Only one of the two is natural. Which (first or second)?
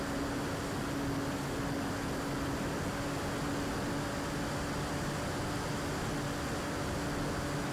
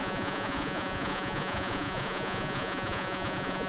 first